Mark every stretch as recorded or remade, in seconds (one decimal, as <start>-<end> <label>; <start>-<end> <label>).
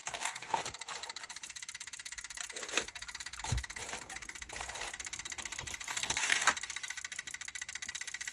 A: 0.0-0.6 remade; 0.6-5.9 recorded; 5.9-6.5 remade; 6.5-8.3 recorded